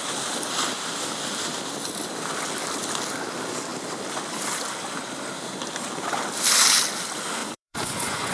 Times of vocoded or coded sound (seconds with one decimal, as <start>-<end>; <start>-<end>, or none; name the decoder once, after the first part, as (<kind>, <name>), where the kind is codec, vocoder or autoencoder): 7.4-8.3 (vocoder, Vocos)